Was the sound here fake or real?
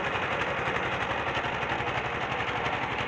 real